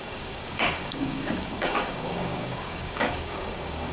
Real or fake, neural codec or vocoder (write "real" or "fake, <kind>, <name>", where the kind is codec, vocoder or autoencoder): fake, codec, DAC